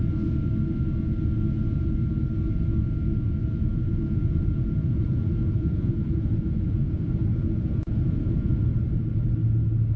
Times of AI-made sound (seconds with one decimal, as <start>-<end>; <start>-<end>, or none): 3.4-8.5